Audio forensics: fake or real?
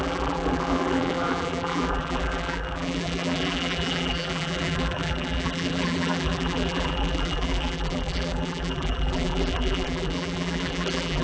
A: fake